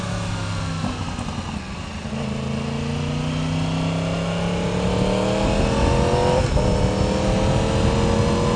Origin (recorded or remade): recorded